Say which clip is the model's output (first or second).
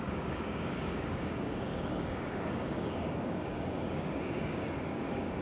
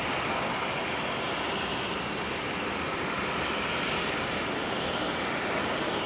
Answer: first